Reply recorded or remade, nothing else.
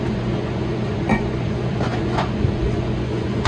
remade